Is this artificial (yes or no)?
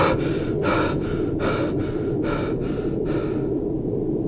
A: no